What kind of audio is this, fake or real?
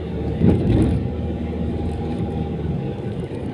fake